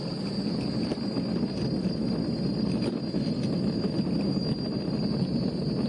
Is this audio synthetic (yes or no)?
no